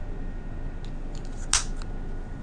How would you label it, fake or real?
real